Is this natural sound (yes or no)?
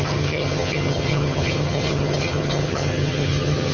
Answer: no